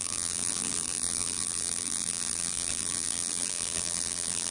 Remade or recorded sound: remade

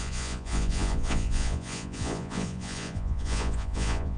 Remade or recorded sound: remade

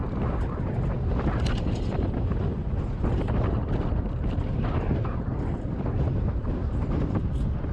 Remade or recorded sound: recorded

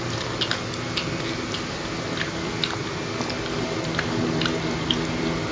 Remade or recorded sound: recorded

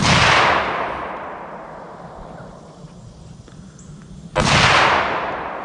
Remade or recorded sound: recorded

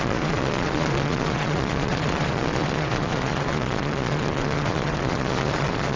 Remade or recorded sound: remade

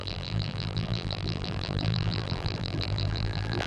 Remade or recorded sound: remade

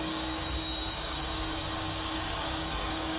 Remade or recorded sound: remade